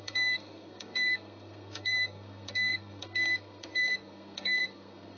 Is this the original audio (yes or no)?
no